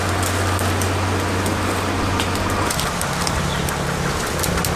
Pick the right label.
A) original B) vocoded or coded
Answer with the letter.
A